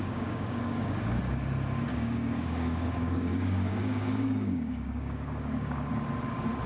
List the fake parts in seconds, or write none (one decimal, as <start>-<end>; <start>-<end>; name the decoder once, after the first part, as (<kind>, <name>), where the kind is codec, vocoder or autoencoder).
0.0-1.2 (codec, DAC); 1.9-5.9